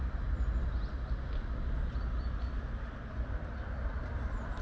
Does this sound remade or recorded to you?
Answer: recorded